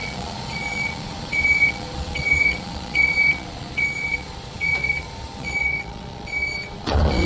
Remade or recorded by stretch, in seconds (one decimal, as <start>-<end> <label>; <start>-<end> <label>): 0.0-7.3 remade